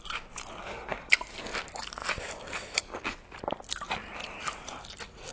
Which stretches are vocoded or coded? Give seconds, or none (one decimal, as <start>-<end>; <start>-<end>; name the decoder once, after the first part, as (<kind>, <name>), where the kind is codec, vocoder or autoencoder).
0.6-1.1 (codec, SNAC)